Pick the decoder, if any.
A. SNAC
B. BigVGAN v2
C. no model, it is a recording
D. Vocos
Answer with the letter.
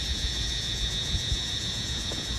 D